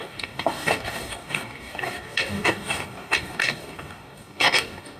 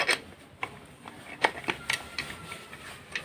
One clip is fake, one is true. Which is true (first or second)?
second